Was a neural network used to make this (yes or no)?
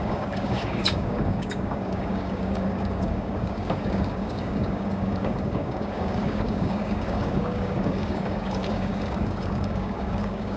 yes